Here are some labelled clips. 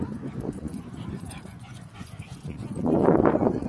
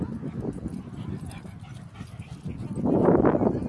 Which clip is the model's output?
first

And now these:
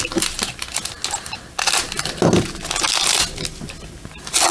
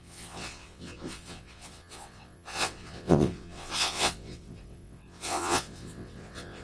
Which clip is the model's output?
second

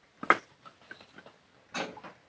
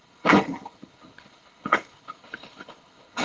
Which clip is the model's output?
second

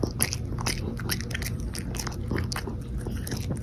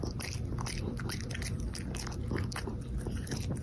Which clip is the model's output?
second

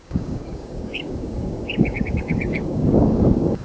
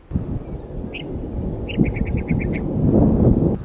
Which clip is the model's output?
first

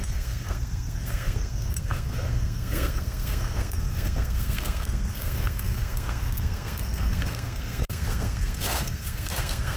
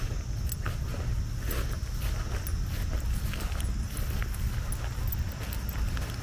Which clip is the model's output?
first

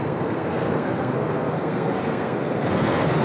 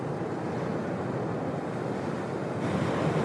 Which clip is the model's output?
first